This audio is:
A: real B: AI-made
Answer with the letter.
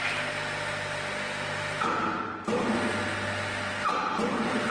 A